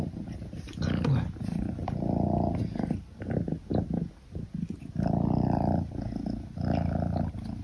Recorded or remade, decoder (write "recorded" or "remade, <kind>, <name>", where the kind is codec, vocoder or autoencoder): recorded